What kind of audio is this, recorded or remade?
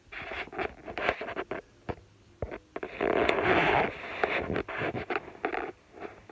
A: recorded